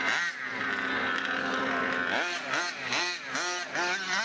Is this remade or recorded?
recorded